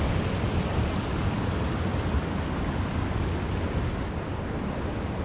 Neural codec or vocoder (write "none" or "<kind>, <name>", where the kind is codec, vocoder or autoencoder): none